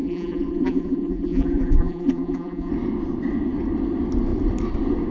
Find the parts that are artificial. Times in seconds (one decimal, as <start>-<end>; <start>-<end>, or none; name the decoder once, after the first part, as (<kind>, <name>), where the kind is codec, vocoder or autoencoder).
0.0-2.7 (vocoder, BigVGAN v2)